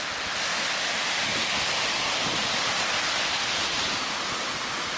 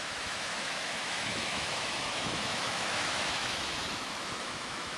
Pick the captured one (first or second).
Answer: first